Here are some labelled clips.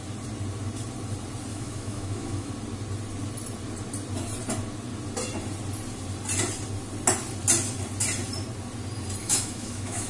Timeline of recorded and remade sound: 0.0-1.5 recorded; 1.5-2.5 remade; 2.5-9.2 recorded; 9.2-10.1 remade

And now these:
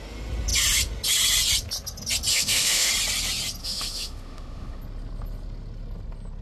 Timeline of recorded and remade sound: 0.0-2.3 recorded; 2.3-2.9 remade; 2.9-3.6 recorded; 3.6-4.8 remade; 4.8-6.4 recorded

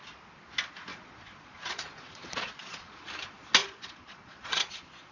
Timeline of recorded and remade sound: 0.0-0.9 recorded; 0.9-3.1 remade; 3.1-3.6 recorded; 3.6-5.1 remade

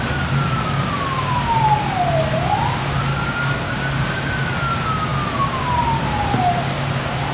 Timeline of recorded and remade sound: 0.0-3.1 recorded; 3.1-4.3 remade; 4.3-7.3 recorded

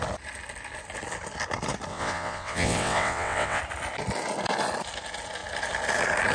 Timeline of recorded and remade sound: 0.0-1.9 recorded; 1.9-3.6 remade; 3.6-6.3 recorded